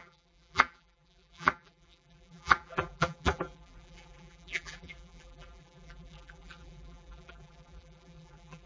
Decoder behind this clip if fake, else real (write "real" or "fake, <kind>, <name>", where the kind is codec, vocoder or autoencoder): fake, vocoder, BigVGAN v2